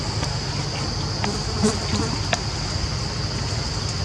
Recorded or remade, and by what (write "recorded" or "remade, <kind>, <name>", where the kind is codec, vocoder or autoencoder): recorded